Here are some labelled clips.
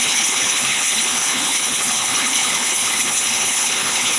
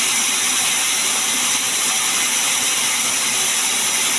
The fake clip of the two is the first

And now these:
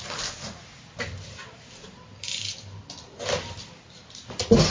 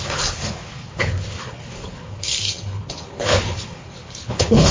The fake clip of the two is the second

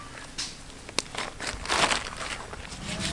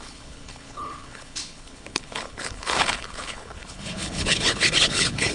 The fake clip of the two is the second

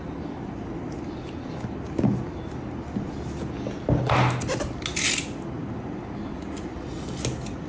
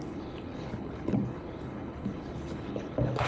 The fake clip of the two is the second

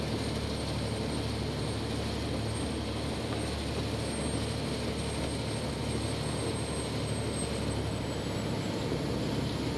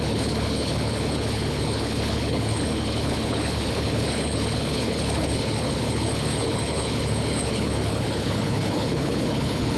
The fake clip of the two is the second